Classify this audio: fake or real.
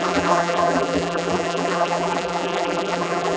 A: fake